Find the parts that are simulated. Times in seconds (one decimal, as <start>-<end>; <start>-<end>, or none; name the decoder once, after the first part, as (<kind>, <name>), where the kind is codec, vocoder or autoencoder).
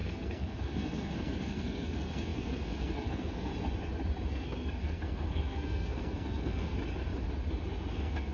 0.0-3.5 (codec, SNAC); 4.3-6.7; 7.9-8.3